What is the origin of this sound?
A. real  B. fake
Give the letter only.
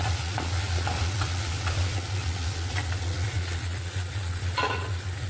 B